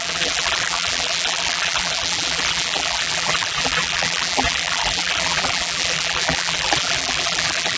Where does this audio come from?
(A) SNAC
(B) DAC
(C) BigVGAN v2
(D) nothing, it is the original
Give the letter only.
C